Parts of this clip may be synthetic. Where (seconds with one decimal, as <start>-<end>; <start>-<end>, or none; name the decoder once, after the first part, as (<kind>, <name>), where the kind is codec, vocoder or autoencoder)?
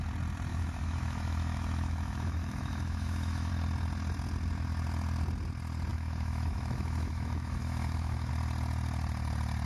0.5-3.5 (autoencoder, DAC-VAE); 5.9-8.3